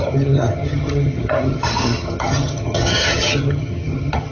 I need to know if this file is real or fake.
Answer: fake